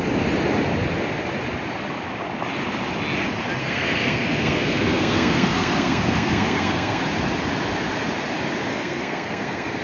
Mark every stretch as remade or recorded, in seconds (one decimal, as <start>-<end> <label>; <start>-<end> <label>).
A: 0.0-3.6 recorded; 3.6-7.0 remade; 7.0-8.7 recorded; 8.7-9.8 remade